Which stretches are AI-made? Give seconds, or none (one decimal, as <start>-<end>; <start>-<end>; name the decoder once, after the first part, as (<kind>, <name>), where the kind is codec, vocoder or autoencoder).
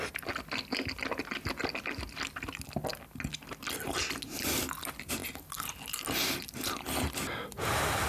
none